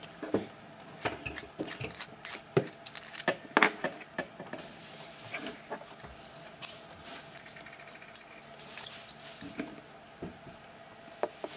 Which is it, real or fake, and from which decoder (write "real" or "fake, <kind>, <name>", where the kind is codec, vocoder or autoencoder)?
real